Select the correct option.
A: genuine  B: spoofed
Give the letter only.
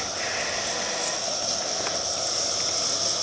A